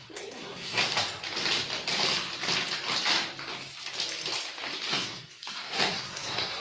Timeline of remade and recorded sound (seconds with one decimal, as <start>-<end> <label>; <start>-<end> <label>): 0.0-0.9 remade; 0.9-4.9 recorded; 4.9-6.6 remade